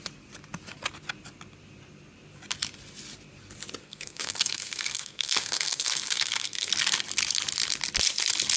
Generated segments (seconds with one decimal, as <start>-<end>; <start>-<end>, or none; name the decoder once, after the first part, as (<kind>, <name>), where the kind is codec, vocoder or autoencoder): 3.8-6.7 (codec, SNAC)